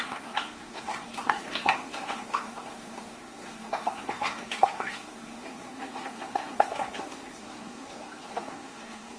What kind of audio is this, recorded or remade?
remade